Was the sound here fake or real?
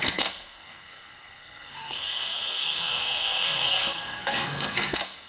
fake